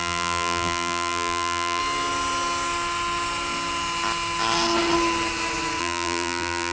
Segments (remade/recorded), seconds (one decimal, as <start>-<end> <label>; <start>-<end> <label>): 0.0-1.8 remade; 1.8-5.8 recorded; 5.8-6.7 remade